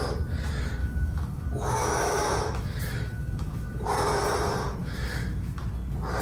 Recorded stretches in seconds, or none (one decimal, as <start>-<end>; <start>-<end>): 0.0-0.8; 3.9-4.8; 5.6-6.2